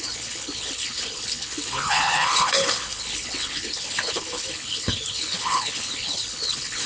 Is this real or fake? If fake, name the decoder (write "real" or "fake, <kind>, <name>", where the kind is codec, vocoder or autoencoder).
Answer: fake, codec, HILCodec